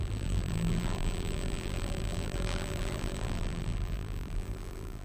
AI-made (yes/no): yes